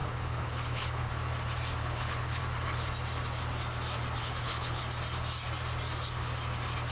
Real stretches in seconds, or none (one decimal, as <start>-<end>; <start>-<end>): 1.1-1.8; 2.4-4.2; 4.8-6.9